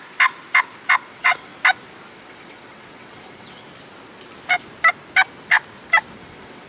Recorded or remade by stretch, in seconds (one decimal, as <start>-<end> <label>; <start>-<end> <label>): 0.0-1.0 recorded; 1.0-1.5 remade; 1.5-2.1 recorded; 2.1-3.7 remade; 3.7-6.2 recorded; 6.2-6.7 remade